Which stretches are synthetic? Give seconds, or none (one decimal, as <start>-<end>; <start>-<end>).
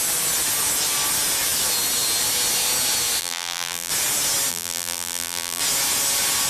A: 3.2-3.9; 4.5-5.6